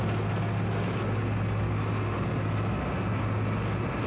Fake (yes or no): no